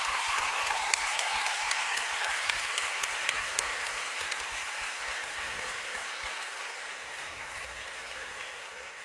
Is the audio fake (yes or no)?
yes